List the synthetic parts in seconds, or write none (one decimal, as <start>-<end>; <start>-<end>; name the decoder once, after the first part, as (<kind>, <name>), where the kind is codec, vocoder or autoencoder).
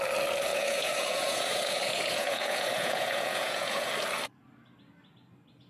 0.5-3.9 (vocoder, Vocos)